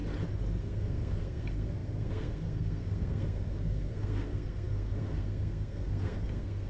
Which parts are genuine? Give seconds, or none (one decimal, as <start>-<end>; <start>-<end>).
0.0-0.6